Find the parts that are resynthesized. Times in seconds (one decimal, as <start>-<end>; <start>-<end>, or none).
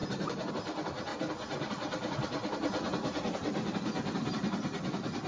none